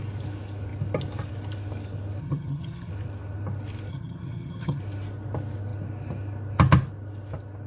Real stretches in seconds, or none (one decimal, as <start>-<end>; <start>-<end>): 0.0-2.2; 2.9-3.9; 4.8-7.7